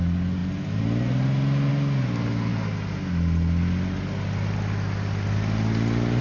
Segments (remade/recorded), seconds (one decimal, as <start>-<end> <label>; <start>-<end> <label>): 0.0-6.2 recorded